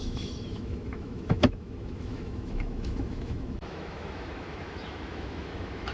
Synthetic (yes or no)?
yes